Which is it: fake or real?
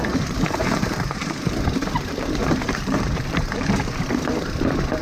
fake